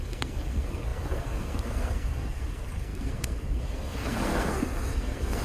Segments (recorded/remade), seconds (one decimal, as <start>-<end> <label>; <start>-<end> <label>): 0.0-5.4 remade